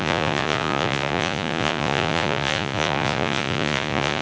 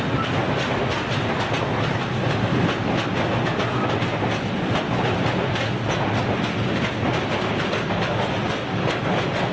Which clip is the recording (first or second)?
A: second